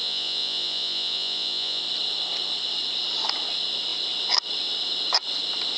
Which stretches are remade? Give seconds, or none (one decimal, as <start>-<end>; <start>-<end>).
0.0-1.8